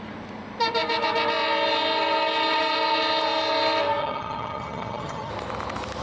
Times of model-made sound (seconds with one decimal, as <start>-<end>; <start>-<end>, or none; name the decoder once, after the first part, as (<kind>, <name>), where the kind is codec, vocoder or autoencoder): 4.0-5.3 (vocoder, HiFi-GAN)